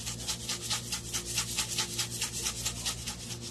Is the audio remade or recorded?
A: recorded